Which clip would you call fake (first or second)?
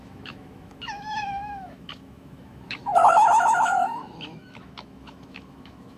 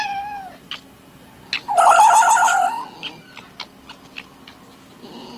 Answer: first